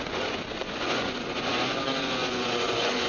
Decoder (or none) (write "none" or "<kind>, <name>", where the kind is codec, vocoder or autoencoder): vocoder, Vocos